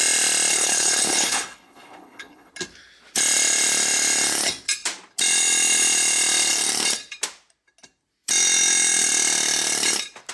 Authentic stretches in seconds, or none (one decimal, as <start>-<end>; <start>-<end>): 0.0-0.5; 2.5-10.3